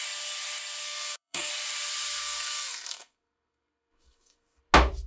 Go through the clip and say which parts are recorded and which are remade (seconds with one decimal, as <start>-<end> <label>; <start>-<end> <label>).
0.0-0.8 recorded; 0.8-1.5 remade; 1.5-2.2 recorded; 2.2-4.6 remade; 4.6-5.1 recorded